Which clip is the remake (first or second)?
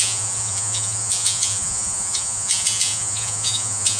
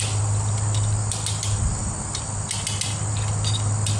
first